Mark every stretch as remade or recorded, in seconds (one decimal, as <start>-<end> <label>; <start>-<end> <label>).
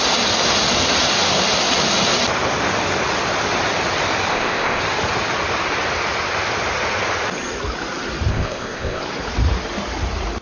0.0-4.3 recorded; 4.3-4.8 remade; 4.8-8.3 recorded; 8.3-9.0 remade; 9.0-10.4 recorded